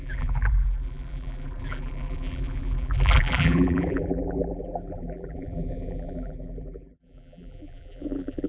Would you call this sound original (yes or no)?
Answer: no